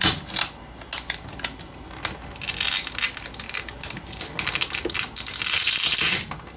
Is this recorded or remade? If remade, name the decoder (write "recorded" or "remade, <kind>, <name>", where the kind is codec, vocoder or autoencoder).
recorded